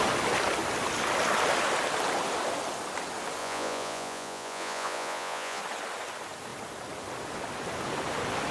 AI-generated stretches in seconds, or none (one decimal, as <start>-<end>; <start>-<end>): 3.4-5.6